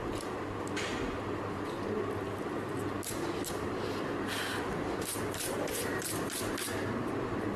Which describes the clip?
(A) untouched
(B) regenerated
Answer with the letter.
A